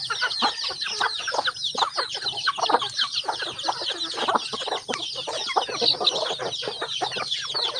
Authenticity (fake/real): real